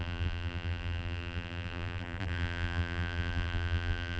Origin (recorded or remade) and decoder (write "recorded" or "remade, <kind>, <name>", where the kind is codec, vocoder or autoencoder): remade, vocoder, BigVGAN v2